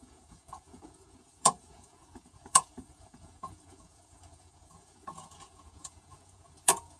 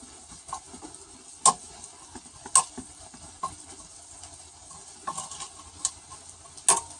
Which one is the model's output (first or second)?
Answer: first